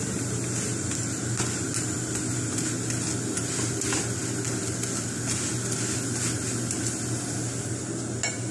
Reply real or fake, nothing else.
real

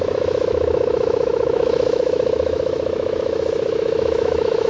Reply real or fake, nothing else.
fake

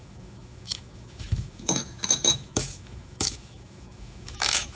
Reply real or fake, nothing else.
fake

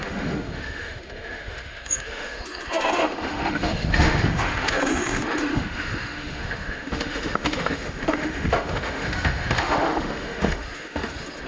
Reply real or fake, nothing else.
fake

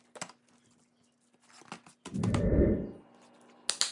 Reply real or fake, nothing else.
real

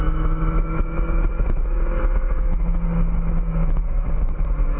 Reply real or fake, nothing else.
fake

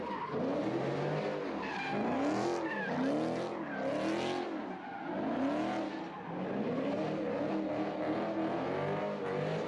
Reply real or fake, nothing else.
real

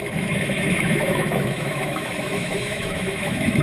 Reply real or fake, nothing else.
fake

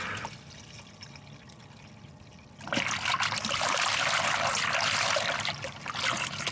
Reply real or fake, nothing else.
real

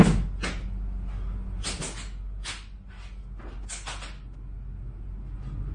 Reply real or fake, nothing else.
real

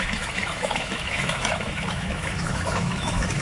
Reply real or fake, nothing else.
fake